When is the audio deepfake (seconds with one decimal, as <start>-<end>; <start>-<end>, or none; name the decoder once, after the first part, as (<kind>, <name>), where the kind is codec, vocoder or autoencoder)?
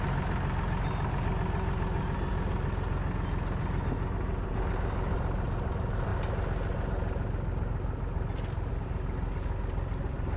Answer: none